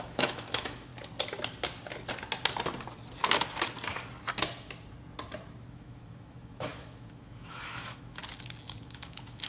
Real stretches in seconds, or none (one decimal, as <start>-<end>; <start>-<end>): 0.9-5.6; 8.2-8.8